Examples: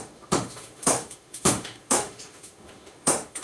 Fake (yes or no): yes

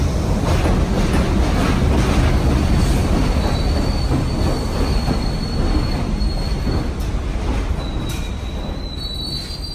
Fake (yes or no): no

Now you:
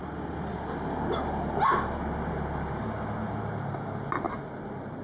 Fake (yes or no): no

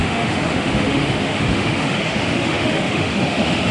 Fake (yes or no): yes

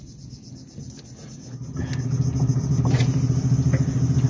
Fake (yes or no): no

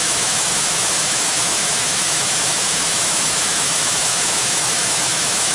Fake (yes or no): yes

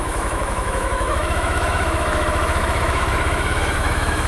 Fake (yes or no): yes